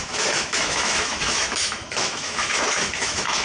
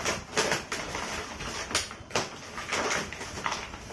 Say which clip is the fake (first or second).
first